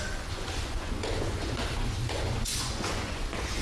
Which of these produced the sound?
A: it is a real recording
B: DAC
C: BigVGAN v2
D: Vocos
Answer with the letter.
D